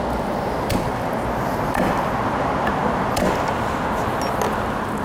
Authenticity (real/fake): real